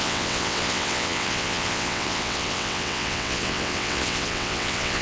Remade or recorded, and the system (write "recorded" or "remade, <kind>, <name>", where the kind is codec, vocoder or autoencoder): remade, vocoder, WaveNeXt